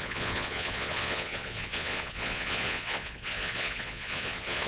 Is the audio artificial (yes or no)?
yes